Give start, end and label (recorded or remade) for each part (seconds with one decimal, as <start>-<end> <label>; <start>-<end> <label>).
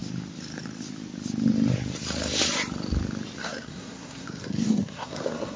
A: 0.0-3.4 recorded; 3.4-5.6 remade